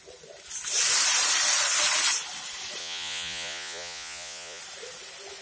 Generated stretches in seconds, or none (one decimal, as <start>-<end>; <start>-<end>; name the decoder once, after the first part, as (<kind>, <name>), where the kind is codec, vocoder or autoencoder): 2.8-4.6 (vocoder, Vocos)